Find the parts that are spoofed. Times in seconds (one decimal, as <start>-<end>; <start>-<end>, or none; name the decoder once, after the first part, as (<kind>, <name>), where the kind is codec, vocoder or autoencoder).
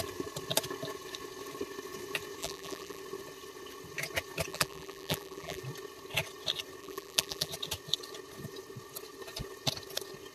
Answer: 2.4-3.0 (vocoder, BigVGAN v2); 4.5-5.6; 6.8-7.5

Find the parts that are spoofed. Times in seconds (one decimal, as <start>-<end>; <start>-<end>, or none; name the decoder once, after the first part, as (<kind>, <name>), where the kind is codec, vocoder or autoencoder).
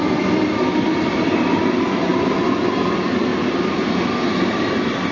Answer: 0.0-3.3 (vocoder, BigVGAN v2); 4.4-5.1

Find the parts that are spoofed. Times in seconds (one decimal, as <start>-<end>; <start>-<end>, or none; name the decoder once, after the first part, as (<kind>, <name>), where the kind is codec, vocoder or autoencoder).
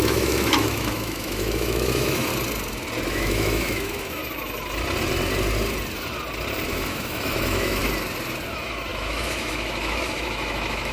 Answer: 0.0-2.3 (autoencoder, DAC-VAE); 3.1-4.2; 6.7-7.8; 8.5-10.9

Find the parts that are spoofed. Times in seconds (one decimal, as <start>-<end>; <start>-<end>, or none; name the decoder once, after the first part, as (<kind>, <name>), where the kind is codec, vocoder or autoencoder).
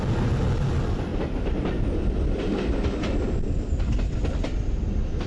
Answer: none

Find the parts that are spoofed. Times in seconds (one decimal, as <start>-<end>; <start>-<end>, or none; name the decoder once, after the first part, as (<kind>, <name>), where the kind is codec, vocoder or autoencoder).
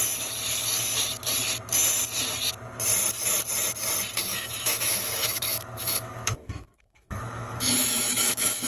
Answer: 4.3-8.7 (autoencoder, DAC-VAE)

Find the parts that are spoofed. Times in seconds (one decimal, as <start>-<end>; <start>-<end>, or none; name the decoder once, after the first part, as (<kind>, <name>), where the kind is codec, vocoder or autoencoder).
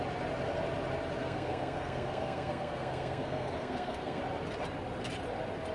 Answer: 1.2-4.2 (codec, SNAC)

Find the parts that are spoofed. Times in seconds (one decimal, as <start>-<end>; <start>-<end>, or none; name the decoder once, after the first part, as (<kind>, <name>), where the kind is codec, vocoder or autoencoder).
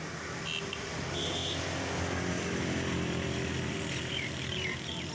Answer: none